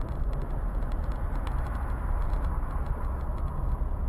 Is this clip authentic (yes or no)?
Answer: yes